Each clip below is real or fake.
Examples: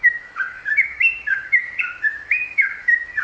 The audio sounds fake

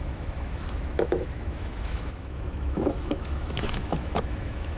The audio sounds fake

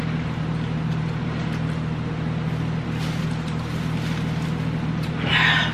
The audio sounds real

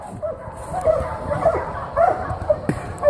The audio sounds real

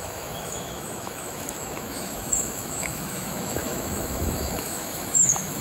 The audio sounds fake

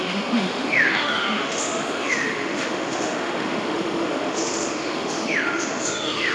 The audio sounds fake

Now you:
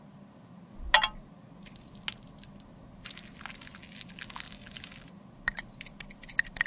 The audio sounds real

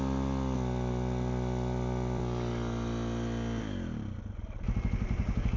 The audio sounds real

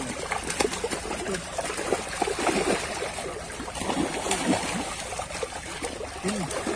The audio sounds real